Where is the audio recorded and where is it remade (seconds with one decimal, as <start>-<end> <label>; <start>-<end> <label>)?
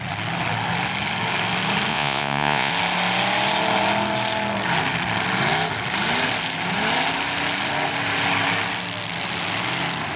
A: 0.0-1.9 recorded; 1.9-2.7 remade; 2.7-10.2 recorded